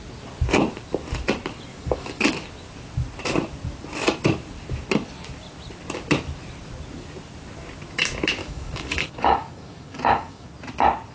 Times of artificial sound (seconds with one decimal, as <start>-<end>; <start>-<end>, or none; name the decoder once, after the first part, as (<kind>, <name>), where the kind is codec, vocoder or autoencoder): 1.7-2.3 (codec, DAC); 8.4-10.5